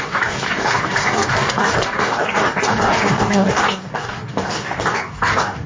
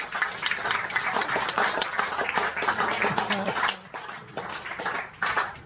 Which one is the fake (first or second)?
first